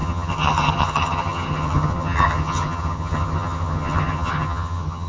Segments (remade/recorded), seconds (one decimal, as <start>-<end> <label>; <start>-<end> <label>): 0.0-5.1 remade